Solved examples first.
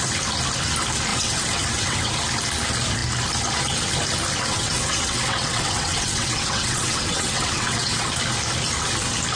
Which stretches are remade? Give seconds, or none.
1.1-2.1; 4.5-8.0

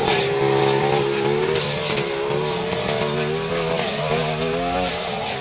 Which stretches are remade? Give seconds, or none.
none

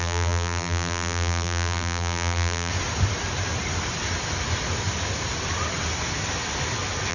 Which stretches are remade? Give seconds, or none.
0.0-2.7